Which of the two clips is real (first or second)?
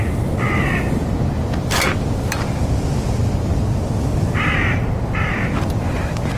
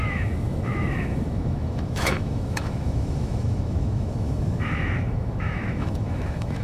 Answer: first